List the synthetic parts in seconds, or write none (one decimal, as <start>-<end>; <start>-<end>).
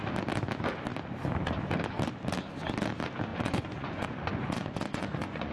3.3-5.5